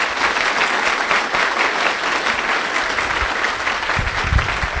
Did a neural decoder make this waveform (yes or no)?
no